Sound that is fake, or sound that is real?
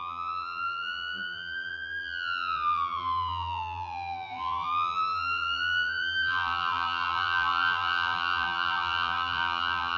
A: fake